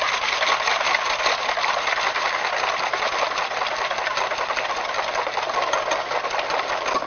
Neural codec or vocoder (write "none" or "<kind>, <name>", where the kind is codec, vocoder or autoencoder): none